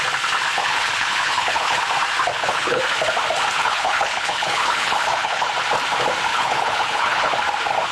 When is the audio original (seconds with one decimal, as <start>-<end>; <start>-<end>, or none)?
0.0-0.6; 1.8-2.3; 2.8-3.6; 5.5-6.3; 7.3-7.9